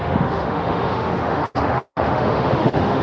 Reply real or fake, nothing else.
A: fake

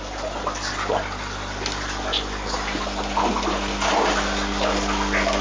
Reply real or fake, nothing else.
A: real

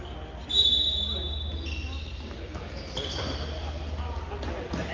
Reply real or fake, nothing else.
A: real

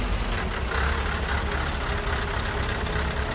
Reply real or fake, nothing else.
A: real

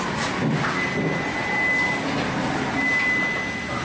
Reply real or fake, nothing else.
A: real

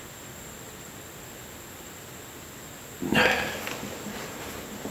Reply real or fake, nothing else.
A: real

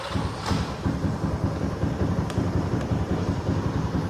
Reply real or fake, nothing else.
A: real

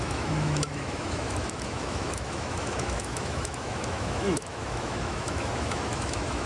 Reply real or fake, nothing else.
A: fake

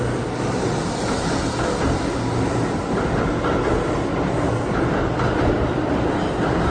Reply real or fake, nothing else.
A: real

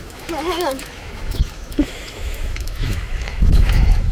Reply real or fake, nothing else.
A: fake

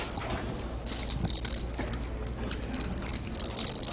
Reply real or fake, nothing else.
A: real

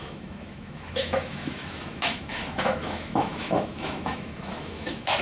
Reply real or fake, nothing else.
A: fake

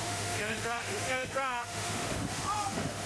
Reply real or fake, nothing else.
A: fake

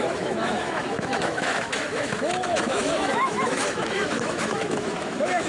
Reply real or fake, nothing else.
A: fake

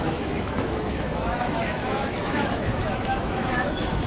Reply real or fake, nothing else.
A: fake